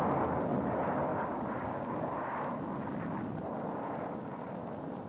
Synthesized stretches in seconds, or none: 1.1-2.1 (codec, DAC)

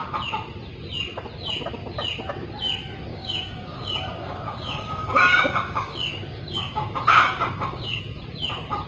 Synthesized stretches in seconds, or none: 3.1-8.0 (codec, DAC)

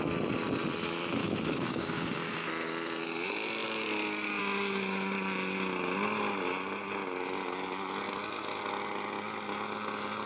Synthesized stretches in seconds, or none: 1.2-2.5 (codec, DAC)